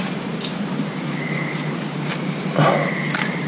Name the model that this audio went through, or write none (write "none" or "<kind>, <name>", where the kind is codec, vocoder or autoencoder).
none